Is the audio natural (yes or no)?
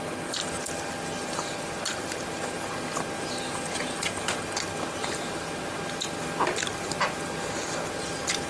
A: yes